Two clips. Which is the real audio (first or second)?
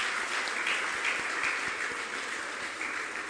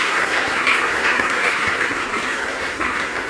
first